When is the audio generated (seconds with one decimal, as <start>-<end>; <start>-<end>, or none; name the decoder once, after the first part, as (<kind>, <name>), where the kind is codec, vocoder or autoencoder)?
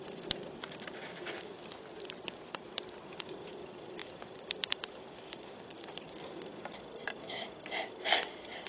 0.0-1.2 (vocoder, BigVGAN v2); 2.3-8.7